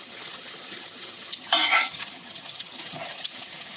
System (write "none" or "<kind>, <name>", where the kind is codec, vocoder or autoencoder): vocoder, HiFi-GAN